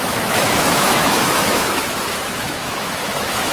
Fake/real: fake